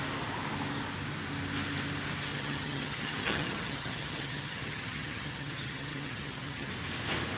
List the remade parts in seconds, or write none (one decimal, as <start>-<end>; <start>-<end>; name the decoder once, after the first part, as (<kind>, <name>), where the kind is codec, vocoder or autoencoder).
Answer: 2.3-6.7 (vocoder, HiFi-GAN)